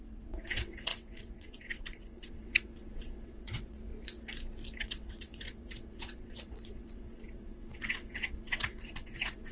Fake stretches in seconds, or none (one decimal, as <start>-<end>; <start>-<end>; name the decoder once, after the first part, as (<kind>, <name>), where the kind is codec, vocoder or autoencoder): 0.0-3.9 (vocoder, WaveNeXt); 4.8-9.5